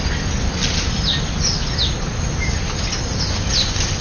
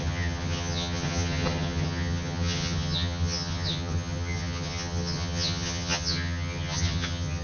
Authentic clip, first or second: first